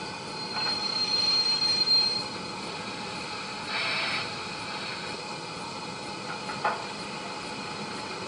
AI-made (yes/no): no